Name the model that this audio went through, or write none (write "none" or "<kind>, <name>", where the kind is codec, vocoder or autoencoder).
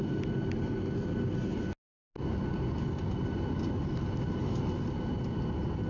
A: none